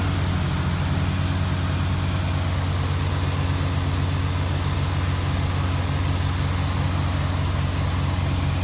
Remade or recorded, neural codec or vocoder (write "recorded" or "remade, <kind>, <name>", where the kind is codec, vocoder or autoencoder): recorded